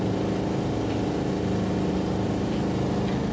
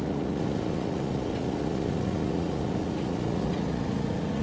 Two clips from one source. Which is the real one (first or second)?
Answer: first